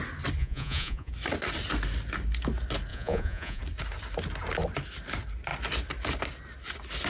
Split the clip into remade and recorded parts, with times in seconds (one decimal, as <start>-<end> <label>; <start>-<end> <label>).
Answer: 0.0-0.4 recorded; 0.4-1.1 remade; 1.1-2.9 recorded; 2.9-3.6 remade; 3.6-7.1 recorded